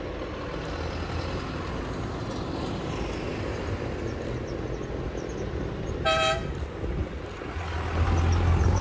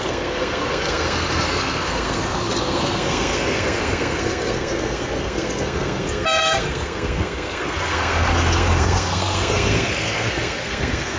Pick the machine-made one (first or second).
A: second